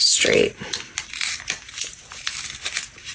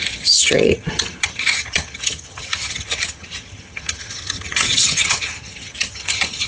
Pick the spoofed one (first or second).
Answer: second